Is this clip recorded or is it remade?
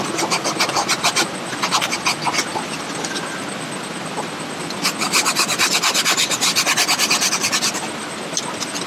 recorded